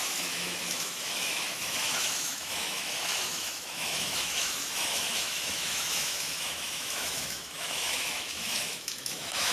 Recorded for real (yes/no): no